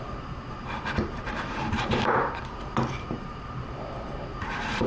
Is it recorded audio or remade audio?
remade